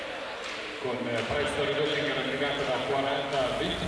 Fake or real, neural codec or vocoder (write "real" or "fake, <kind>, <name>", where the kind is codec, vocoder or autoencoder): real